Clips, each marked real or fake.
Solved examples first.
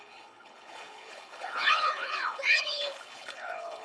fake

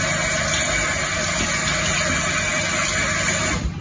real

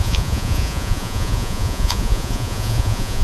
fake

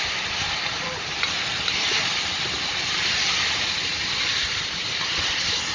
fake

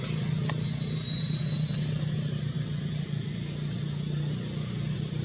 real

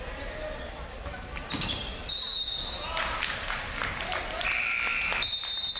fake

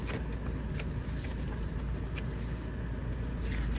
real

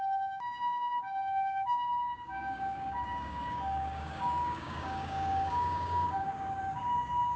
fake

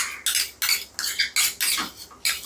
real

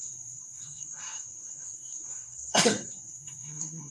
fake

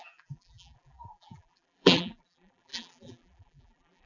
fake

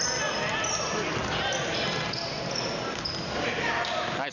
real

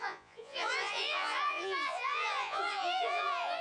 fake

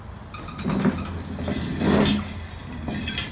real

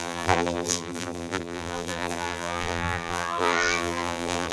fake